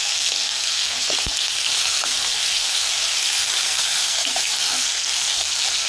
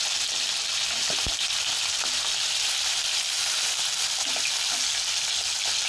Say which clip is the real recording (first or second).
second